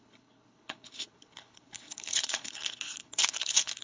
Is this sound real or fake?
fake